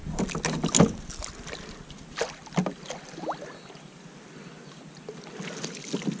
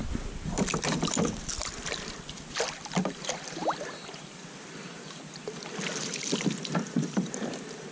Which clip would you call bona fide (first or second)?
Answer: first